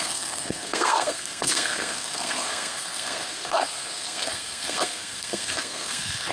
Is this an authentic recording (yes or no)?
no